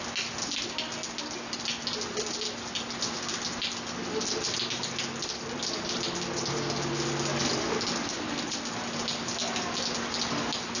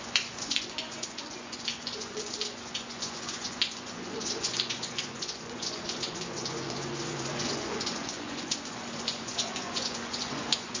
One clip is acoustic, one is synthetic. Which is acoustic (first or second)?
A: first